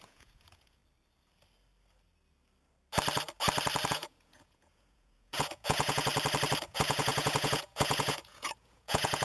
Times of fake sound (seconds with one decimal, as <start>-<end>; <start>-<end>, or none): 0.0-0.8; 3.9-6.1; 6.6-9.2